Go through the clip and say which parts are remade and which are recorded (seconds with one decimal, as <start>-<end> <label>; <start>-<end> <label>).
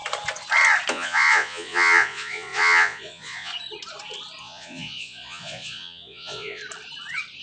0.0-0.9 recorded; 0.9-3.5 remade; 3.5-4.4 recorded; 4.4-6.6 remade; 6.6-7.4 recorded